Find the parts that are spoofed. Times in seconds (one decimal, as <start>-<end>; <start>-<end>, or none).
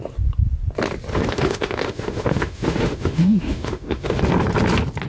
1.1-4.2